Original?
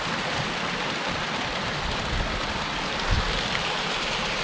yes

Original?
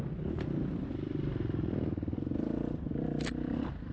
yes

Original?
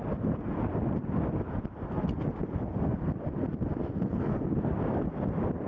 yes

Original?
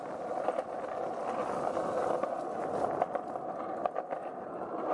yes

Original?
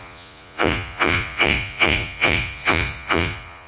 no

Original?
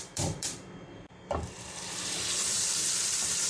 no